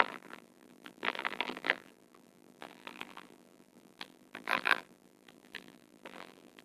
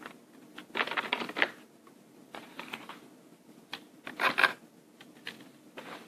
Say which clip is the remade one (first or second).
first